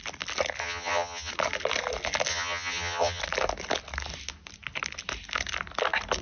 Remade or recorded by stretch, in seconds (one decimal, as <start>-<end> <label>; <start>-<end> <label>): 0.0-0.6 recorded; 0.6-1.3 remade; 1.3-2.3 recorded; 2.3-3.2 remade; 3.2-6.2 recorded